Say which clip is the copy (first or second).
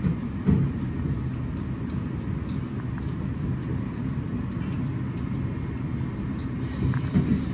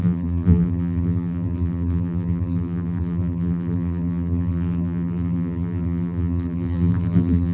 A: second